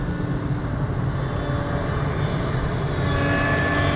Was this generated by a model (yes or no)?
no